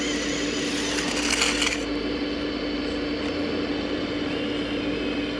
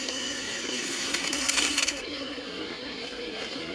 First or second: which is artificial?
second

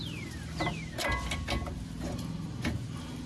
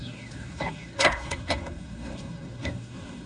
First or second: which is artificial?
second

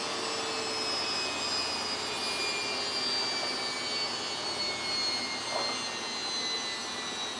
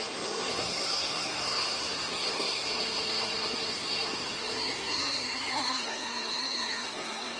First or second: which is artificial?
second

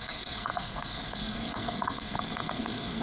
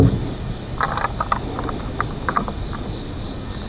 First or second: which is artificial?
first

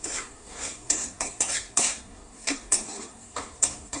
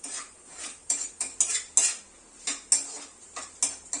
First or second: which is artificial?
first